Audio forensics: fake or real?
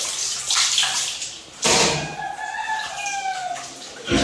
real